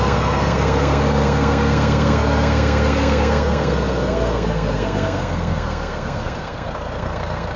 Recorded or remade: remade